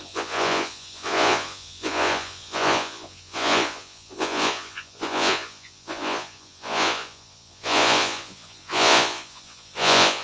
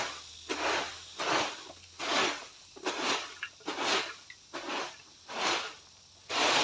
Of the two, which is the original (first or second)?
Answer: second